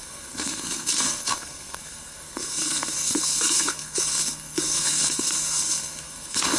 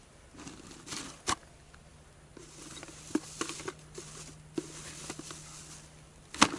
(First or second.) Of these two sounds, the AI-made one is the first